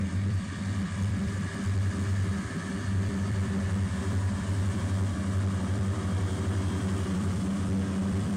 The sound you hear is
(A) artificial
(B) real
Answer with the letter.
A